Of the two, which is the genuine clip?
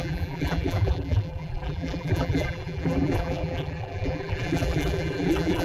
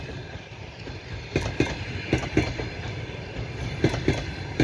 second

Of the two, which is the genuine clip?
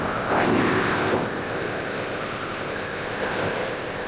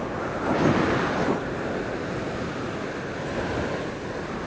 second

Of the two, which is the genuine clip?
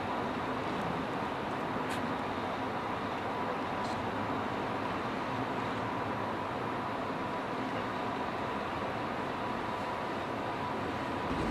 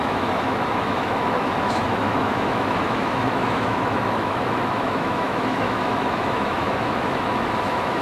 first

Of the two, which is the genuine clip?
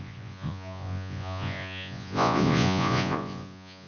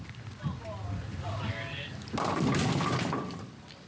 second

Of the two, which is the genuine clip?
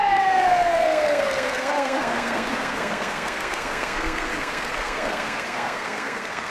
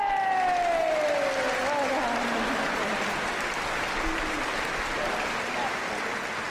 second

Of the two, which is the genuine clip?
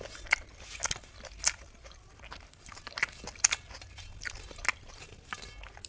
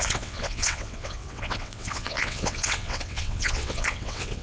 first